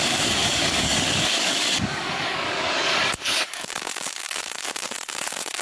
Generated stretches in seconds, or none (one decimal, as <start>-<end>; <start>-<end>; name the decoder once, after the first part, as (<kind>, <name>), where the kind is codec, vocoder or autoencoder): 0.0-5.6 (codec, DAC)